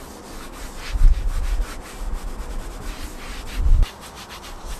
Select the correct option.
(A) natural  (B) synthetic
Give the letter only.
A